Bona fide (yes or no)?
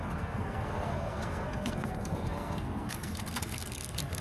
no